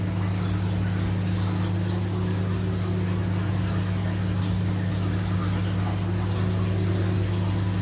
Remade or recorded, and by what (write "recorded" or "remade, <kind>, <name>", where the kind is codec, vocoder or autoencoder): recorded